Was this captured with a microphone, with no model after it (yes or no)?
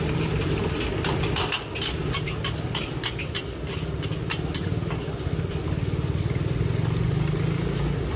yes